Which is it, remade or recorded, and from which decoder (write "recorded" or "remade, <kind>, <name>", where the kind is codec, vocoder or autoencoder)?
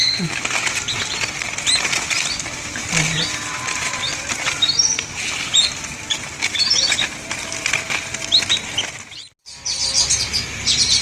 recorded